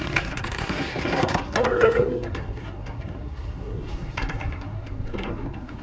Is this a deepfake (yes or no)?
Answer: yes